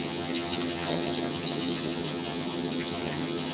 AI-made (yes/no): yes